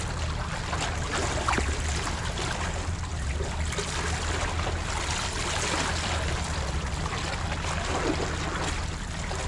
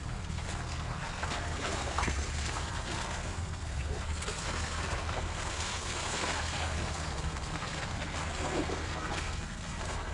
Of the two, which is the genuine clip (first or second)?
first